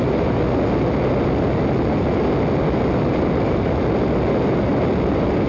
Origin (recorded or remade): recorded